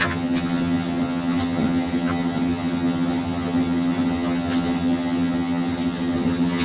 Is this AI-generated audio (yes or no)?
yes